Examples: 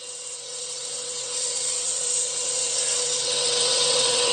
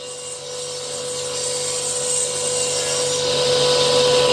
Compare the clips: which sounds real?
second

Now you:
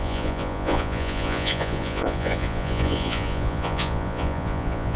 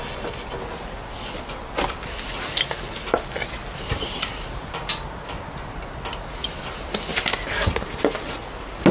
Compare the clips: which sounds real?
second